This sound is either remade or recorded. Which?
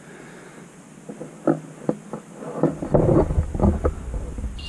recorded